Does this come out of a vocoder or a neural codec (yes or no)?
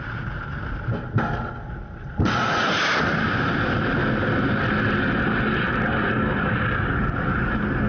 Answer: no